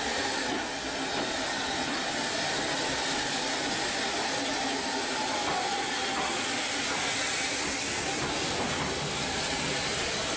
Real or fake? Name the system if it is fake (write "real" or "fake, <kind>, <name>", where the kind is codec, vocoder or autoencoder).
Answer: real